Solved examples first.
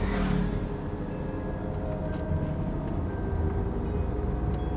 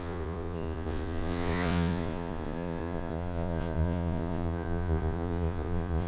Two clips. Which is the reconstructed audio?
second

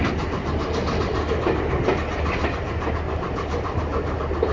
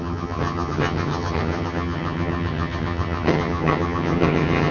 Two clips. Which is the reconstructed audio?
second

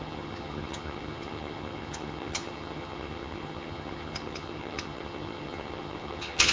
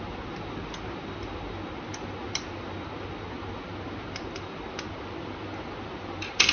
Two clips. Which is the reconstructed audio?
first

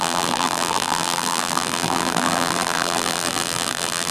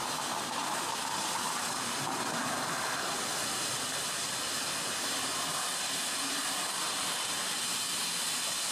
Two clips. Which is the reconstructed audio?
first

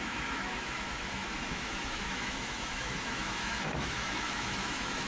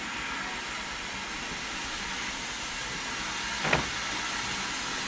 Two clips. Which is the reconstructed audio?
first